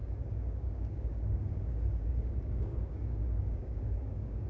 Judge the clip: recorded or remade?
remade